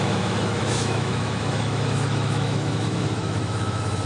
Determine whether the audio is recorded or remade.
remade